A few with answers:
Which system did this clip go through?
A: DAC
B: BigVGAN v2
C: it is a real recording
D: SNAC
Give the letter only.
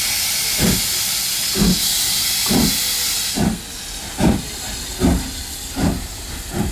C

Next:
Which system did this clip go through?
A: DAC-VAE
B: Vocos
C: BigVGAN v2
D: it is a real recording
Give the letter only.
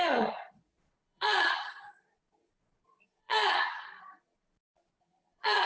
B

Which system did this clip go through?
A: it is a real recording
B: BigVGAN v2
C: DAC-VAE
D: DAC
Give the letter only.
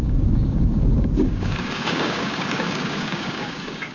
D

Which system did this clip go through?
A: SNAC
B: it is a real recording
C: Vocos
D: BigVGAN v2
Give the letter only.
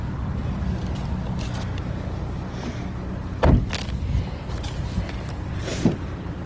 B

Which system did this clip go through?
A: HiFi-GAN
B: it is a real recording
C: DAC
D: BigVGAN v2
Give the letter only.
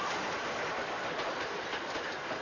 B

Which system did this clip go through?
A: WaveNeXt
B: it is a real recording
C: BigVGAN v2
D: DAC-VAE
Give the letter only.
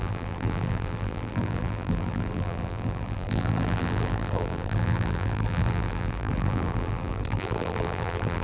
C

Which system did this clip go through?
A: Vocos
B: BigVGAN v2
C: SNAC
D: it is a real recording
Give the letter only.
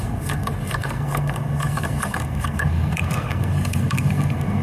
C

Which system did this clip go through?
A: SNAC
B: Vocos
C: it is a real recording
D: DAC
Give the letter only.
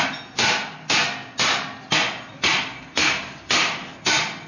C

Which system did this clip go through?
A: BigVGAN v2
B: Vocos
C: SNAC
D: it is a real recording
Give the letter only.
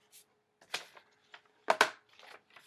D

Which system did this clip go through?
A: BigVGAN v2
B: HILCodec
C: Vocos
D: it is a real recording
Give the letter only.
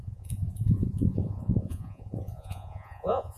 C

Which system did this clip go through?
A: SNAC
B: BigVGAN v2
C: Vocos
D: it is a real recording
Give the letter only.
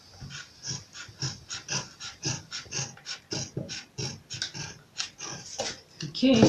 D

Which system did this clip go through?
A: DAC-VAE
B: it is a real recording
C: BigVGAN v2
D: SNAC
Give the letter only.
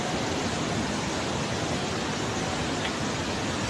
B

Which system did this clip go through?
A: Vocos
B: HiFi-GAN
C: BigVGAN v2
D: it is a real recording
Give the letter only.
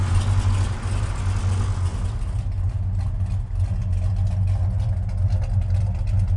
D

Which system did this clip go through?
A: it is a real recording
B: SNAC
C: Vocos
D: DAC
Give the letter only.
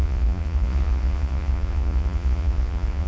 C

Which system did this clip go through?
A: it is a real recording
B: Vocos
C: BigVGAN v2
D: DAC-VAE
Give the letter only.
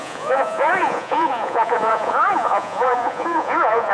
B